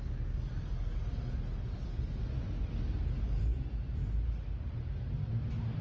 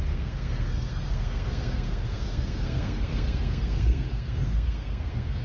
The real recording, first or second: first